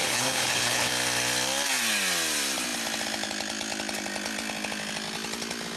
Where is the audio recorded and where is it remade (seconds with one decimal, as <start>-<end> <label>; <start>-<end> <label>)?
0.0-0.9 remade; 0.9-5.8 recorded